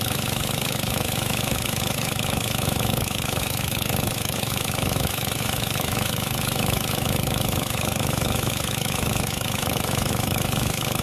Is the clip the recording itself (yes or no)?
no